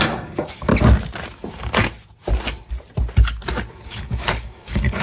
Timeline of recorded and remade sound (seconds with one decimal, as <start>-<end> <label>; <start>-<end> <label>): 0.0-0.7 remade; 0.7-3.7 recorded; 3.7-5.0 remade